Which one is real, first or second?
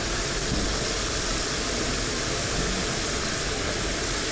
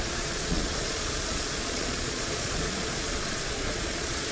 first